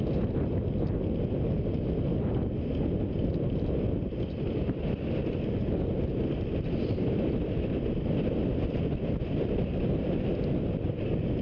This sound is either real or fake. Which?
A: real